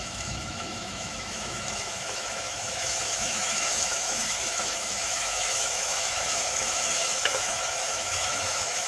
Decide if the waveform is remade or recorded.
remade